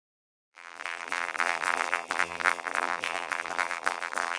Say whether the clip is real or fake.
fake